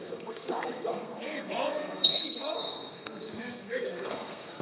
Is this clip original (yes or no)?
no